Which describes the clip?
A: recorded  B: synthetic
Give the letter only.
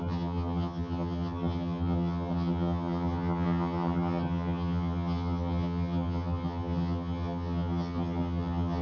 B